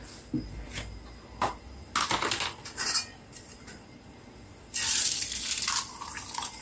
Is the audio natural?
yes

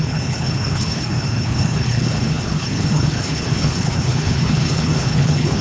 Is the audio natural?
no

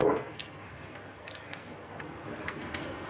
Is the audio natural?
no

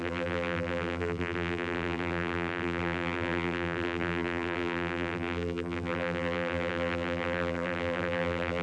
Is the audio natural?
no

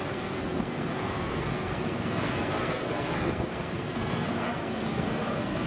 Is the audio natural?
no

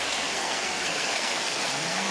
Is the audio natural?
no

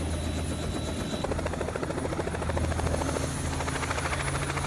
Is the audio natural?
yes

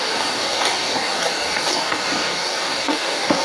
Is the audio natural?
no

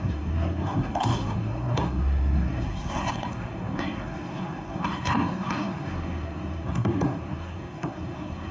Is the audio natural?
no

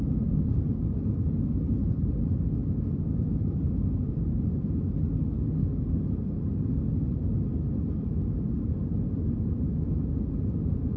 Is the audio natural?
yes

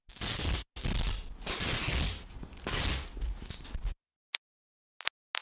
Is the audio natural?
yes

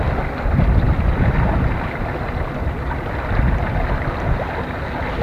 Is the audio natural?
yes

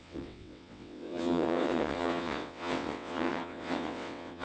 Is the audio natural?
no